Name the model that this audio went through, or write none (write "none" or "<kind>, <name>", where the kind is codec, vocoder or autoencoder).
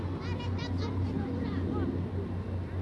none